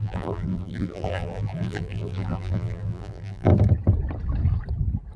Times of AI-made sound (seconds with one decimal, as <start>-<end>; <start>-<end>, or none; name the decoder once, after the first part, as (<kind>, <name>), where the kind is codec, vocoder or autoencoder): 0.0-3.5 (vocoder, BigVGAN v2)